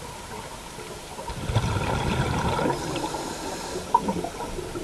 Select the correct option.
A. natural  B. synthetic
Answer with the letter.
A